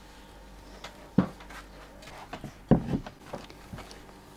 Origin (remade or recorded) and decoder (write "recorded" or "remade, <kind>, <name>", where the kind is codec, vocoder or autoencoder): recorded